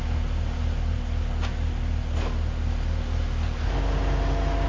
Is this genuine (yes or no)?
yes